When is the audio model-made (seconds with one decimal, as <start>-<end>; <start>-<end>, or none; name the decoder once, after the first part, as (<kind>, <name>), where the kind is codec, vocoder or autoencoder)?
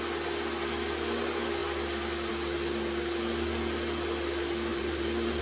4.7-5.4 (vocoder, BigVGAN v2)